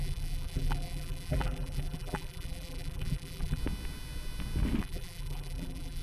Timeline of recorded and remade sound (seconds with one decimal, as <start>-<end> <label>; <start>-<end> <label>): 0.0-3.6 remade; 3.6-4.8 recorded; 4.8-6.0 remade